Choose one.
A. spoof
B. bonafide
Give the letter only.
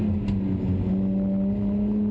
B